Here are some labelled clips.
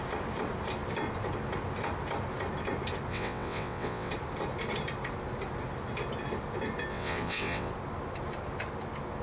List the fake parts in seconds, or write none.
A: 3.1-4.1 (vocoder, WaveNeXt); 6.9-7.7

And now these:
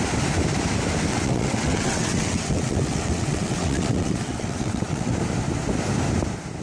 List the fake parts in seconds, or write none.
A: 1.1-5.1 (vocoder, WaveNeXt)

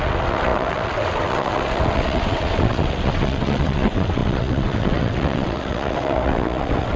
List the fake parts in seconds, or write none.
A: 0.0-7.0 (vocoder, WaveNeXt)

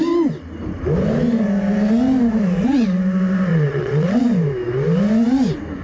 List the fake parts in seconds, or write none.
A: 3.5-4.2 (vocoder, WaveNeXt)

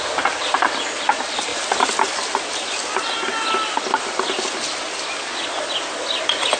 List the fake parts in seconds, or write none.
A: none

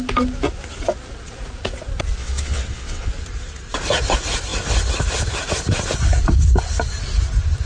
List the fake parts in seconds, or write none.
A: 2.2-3.1 (vocoder, WaveNeXt)